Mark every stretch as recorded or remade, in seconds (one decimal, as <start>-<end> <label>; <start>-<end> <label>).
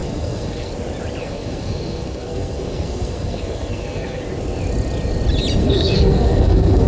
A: 0.0-0.7 remade; 0.7-1.2 recorded; 1.2-4.2 remade; 4.2-5.6 recorded; 5.6-6.9 remade